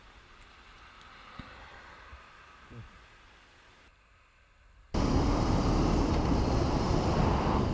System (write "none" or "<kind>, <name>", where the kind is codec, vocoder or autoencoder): vocoder, BigVGAN v2